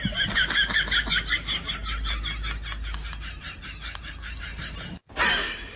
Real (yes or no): yes